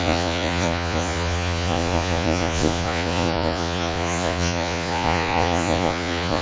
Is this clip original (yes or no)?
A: no